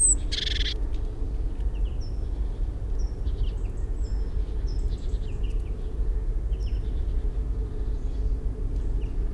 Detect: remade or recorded recorded